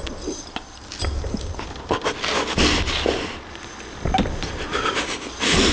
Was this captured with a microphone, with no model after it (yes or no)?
yes